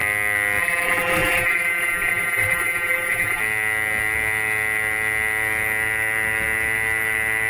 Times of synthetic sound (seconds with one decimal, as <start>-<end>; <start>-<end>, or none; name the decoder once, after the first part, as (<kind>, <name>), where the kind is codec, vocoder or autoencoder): 0.6-3.4 (vocoder, BigVGAN v2)